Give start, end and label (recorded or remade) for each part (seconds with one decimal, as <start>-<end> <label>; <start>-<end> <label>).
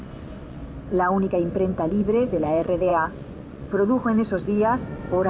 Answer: 0.0-0.6 remade; 0.6-1.3 recorded; 1.3-5.3 remade